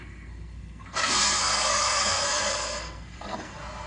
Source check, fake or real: fake